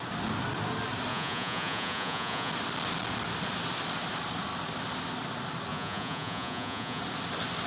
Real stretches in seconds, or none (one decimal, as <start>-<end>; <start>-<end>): 0.0-1.1; 2.5-5.7; 7.0-7.7